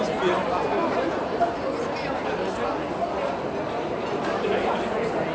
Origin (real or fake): real